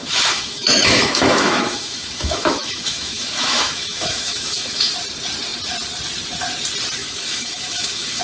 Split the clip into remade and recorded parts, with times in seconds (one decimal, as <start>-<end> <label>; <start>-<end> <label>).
0.0-4.9 remade; 4.9-7.0 recorded; 7.0-8.2 remade